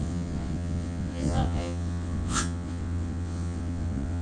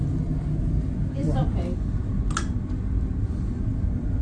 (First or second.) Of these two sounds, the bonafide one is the second